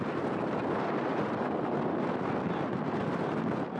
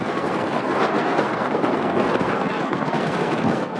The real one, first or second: first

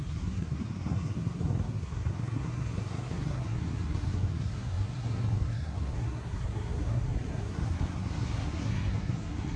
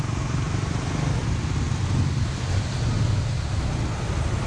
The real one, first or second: second